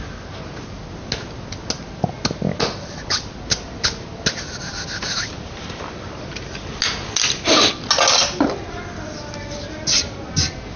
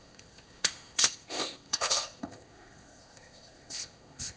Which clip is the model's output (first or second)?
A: second